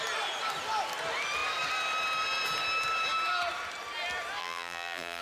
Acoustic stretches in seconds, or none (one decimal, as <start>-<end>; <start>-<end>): 0.0-4.4